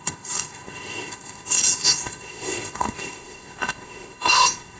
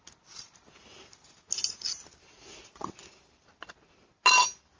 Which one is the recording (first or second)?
second